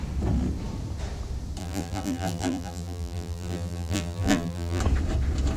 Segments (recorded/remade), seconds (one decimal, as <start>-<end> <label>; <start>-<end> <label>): 0.0-1.6 recorded; 1.6-4.8 remade; 4.8-5.6 recorded